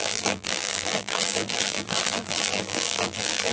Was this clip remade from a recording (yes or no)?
yes